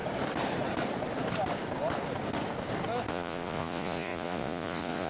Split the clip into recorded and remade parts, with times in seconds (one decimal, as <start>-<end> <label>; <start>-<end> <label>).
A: 0.0-3.1 recorded; 3.1-5.1 remade